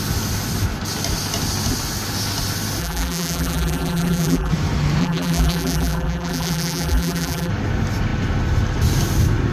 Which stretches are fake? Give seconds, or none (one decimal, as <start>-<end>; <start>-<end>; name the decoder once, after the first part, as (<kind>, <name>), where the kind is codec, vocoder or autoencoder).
2.8-4.5 (vocoder, BigVGAN v2); 5.0-7.5